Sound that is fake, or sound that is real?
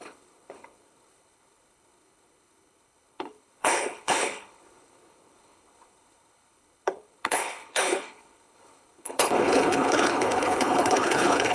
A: fake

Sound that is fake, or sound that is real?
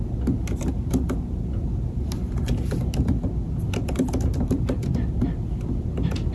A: real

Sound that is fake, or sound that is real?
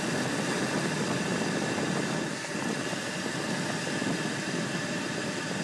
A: real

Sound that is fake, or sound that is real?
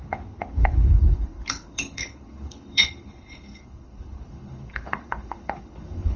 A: fake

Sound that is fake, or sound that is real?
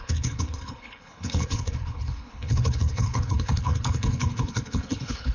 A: fake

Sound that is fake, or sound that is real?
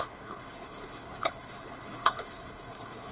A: fake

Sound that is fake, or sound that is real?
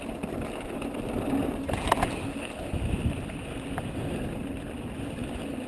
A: real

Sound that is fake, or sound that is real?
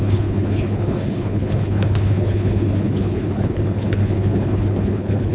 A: fake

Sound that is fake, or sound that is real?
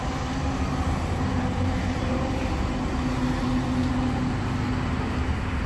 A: real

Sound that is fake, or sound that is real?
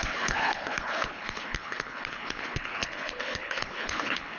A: fake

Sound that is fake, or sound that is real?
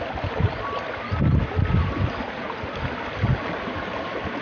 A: real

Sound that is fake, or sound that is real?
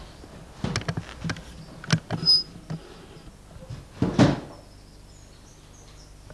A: real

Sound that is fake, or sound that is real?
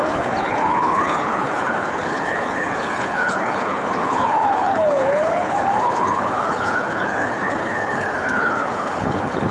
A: fake